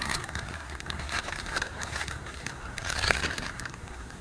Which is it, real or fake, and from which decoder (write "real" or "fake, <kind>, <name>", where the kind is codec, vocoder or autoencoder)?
fake, codec, SNAC